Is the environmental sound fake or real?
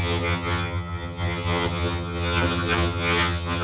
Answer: fake